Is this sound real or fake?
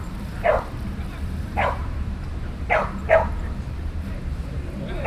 fake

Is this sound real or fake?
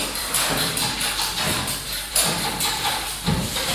fake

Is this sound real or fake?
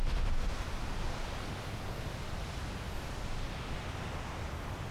real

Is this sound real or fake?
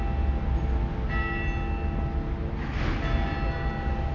real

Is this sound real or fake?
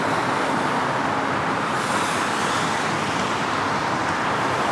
real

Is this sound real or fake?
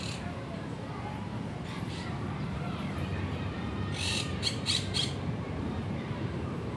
fake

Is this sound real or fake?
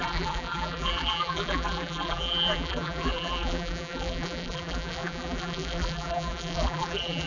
fake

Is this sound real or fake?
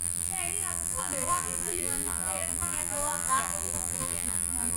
fake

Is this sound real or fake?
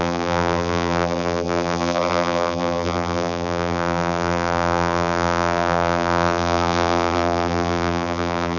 fake